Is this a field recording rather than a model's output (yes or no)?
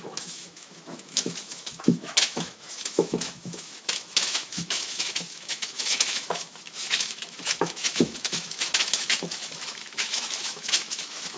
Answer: no